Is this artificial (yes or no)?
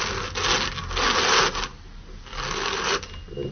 no